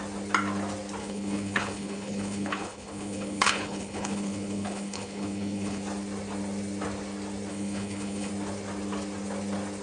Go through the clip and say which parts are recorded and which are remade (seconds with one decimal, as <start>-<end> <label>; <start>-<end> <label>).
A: 0.0-1.0 recorded; 1.0-5.8 remade; 5.8-7.5 recorded; 7.5-8.3 remade; 8.3-9.8 recorded